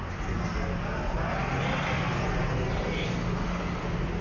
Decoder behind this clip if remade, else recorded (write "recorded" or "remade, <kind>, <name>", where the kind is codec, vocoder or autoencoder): recorded